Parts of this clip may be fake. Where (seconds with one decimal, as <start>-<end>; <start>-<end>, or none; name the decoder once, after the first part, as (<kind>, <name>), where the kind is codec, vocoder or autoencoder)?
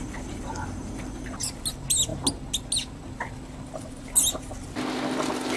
none